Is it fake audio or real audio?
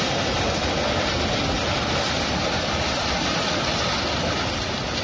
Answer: real